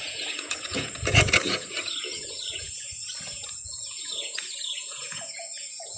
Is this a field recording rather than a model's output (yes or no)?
no